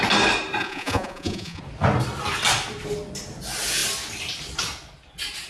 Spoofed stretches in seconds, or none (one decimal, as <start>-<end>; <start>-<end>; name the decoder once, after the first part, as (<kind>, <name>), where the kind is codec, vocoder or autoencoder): 0.6-1.6 (vocoder, Vocos)